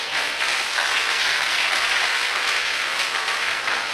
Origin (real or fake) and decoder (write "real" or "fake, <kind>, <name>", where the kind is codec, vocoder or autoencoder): fake, codec, SNAC